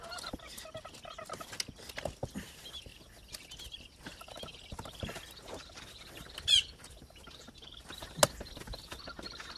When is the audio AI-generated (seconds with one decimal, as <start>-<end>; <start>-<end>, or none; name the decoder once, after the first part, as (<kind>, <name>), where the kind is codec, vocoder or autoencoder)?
none